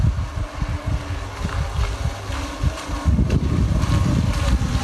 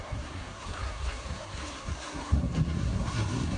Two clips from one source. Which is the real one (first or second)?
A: first